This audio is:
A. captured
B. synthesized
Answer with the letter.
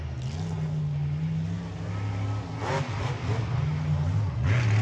A